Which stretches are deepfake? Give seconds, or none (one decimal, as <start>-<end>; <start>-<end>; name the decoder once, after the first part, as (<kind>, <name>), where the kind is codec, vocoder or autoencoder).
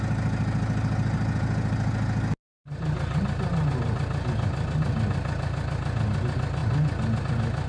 none